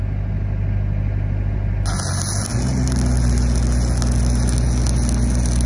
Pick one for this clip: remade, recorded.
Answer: recorded